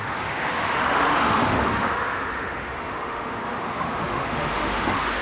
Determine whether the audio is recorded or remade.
remade